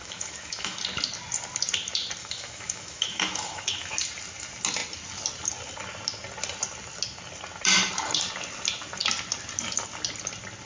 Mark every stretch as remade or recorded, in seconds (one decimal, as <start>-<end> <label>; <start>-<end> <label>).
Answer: 0.0-0.8 remade; 0.8-2.2 recorded; 2.2-3.9 remade; 3.9-10.7 recorded